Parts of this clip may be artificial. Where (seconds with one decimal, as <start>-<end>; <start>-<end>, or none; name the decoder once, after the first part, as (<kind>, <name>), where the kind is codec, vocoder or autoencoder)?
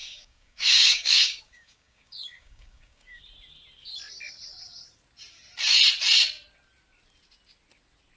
0.0-3.2 (codec, DAC)